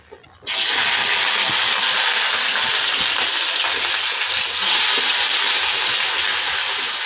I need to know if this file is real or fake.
real